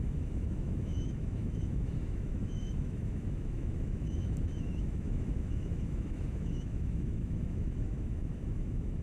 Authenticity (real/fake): fake